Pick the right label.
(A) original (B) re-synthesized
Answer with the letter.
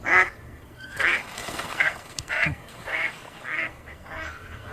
B